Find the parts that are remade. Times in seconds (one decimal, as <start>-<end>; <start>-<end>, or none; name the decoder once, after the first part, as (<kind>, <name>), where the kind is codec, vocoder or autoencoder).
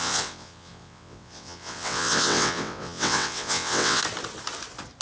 0.0-4.0 (vocoder, WaveNeXt)